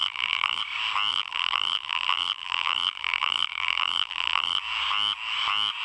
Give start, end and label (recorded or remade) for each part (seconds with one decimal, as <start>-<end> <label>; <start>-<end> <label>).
0.0-0.6 remade; 0.6-1.1 recorded; 1.1-4.6 remade; 4.6-5.8 recorded